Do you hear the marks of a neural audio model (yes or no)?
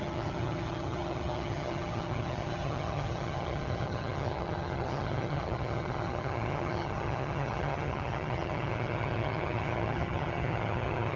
yes